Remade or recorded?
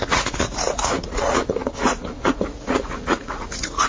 remade